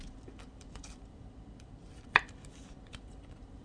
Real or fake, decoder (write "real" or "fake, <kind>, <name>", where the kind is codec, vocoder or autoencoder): fake, vocoder, BigVGAN v2